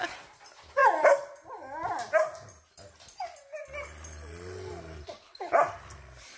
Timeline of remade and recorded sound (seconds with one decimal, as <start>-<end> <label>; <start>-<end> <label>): 0.0-6.4 recorded